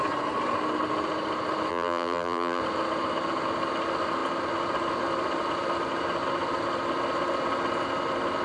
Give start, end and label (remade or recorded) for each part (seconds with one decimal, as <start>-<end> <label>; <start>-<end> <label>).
0.0-1.7 recorded; 1.7-2.6 remade; 2.6-8.4 recorded

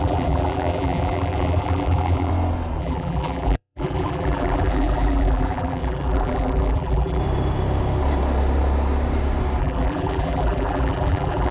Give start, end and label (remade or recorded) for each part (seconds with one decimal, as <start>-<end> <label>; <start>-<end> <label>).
0.0-2.3 remade; 2.3-2.8 recorded; 2.8-7.2 remade; 7.2-9.6 recorded; 9.6-11.5 remade

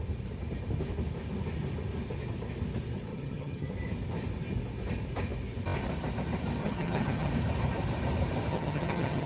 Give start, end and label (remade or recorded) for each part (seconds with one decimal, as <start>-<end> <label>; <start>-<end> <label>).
0.0-3.1 recorded; 3.1-3.7 remade; 3.7-6.6 recorded; 6.6-7.3 remade; 7.3-8.5 recorded; 8.5-9.3 remade

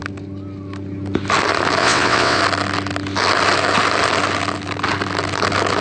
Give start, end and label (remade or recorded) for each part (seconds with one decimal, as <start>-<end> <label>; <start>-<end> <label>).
0.0-1.8 recorded; 1.8-2.4 remade; 2.4-5.8 recorded

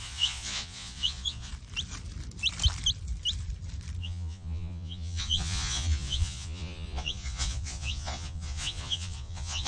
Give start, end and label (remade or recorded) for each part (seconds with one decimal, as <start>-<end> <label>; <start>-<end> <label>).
0.0-1.5 remade; 1.5-4.0 recorded; 4.0-9.7 remade

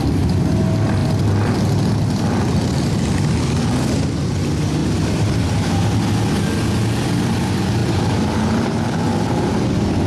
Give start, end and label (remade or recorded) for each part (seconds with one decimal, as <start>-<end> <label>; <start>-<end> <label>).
0.0-1.0 recorded; 1.0-1.6 remade; 1.6-4.8 recorded; 4.8-5.4 remade; 5.4-7.8 recorded; 7.8-9.5 remade; 9.5-10.1 recorded